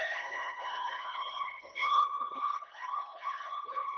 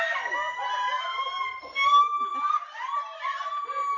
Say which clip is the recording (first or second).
second